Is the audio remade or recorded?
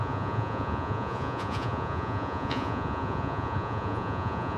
remade